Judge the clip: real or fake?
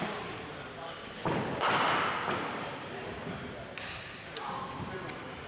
real